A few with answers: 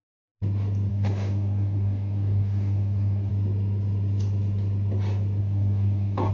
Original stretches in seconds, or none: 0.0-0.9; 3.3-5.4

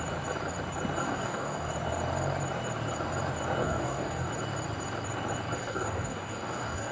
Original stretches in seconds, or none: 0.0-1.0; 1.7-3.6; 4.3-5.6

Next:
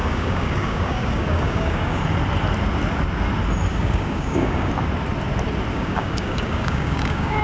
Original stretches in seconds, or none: 2.0-3.7; 4.7-5.7